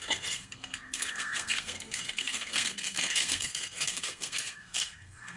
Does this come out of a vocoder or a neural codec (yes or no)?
yes